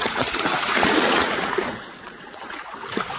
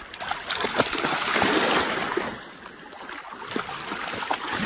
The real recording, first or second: second